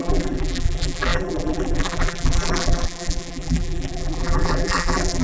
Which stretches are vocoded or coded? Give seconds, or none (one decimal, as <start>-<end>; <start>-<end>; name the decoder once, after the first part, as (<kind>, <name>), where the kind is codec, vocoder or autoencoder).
0.0-5.2 (vocoder, BigVGAN v2)